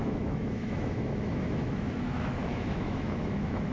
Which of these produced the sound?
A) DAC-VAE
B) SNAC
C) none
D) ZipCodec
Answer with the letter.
A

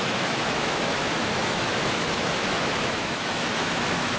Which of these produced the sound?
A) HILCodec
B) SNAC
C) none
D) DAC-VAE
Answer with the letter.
D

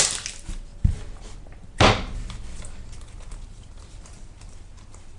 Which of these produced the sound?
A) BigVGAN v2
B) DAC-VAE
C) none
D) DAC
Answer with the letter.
C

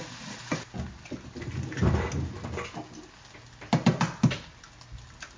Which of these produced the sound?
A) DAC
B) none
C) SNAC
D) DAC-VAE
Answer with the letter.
B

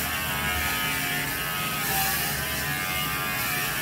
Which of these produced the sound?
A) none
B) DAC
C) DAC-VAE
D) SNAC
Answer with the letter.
A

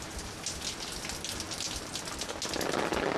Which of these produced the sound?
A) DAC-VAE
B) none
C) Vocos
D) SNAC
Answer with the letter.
B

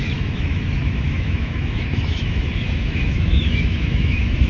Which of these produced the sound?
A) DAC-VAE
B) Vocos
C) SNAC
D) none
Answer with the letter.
A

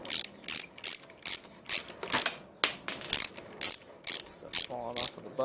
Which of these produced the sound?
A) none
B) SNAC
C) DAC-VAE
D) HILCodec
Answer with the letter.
A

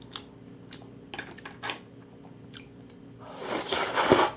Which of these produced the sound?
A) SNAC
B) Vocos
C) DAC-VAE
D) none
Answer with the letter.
D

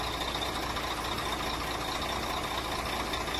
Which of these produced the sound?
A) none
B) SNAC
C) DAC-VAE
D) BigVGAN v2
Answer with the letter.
A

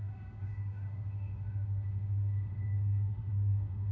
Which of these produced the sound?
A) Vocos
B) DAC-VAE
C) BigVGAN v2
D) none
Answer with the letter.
B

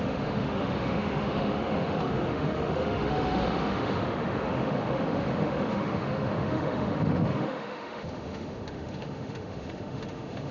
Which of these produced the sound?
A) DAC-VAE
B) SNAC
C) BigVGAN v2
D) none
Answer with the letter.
A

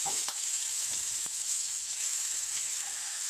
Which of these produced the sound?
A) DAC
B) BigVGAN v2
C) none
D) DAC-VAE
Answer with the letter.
D